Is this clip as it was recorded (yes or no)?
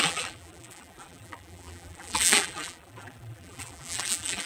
no